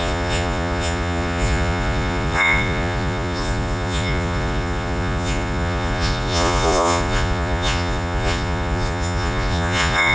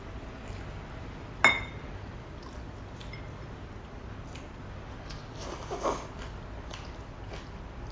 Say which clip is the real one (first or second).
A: second